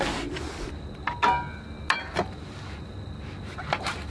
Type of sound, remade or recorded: recorded